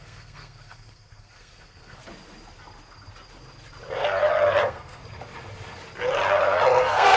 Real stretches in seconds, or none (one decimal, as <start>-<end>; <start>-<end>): 2.0-4.6; 5.0-6.8